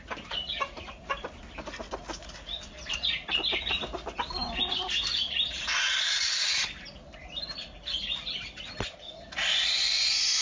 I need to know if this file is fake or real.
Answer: real